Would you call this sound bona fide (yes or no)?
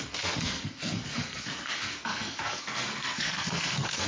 no